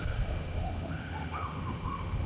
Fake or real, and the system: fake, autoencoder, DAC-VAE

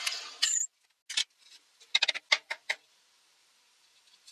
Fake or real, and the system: real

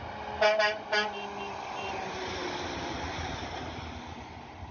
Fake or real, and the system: real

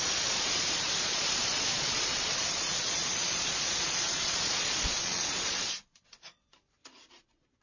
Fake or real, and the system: fake, vocoder, Vocos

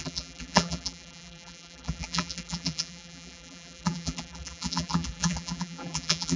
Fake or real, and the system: fake, vocoder, BigVGAN v2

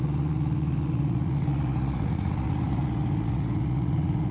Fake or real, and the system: fake, vocoder, Vocos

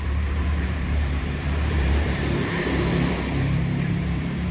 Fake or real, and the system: fake, vocoder, BigVGAN v2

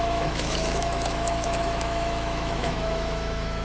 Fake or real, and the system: fake, autoencoder, DAC-VAE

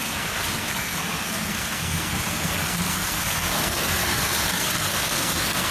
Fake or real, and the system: fake, codec, SNAC